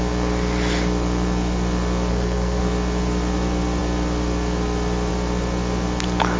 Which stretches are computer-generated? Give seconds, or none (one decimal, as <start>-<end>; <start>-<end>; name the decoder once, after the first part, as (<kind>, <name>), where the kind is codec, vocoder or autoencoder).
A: 2.1-2.6 (codec, SNAC)